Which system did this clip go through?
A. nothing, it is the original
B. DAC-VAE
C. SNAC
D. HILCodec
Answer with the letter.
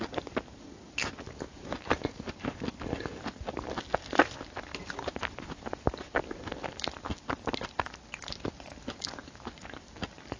A